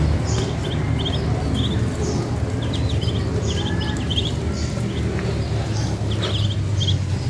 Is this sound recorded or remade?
recorded